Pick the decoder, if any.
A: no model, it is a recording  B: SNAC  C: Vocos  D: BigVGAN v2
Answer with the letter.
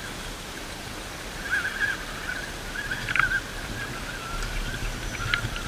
A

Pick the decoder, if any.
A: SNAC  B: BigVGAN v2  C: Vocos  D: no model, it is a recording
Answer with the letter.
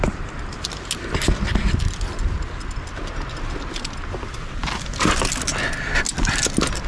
D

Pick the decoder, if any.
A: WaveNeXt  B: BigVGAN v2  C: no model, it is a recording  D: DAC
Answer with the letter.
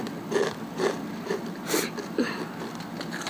C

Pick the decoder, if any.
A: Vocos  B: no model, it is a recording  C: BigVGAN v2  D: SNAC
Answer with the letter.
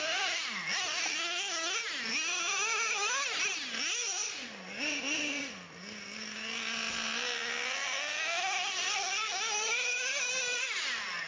B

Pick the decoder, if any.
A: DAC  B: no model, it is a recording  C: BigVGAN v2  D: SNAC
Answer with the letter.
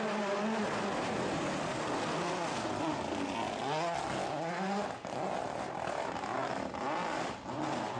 B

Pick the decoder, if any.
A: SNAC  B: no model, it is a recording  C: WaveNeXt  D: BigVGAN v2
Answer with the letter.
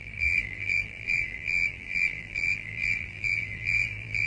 D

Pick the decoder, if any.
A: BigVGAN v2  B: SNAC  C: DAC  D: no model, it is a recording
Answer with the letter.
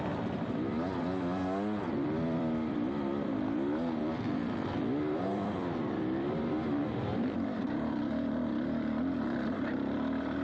A